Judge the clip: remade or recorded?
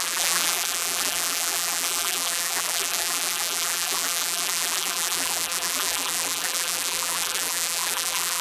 remade